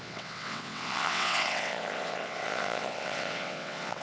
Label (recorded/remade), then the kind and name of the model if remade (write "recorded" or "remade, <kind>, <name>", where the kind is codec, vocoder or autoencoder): remade, vocoder, WaveNeXt